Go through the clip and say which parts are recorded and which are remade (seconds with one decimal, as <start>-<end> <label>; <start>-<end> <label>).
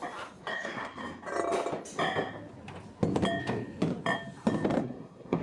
0.0-0.5 recorded; 0.5-1.0 remade; 1.0-4.8 recorded; 4.8-5.4 remade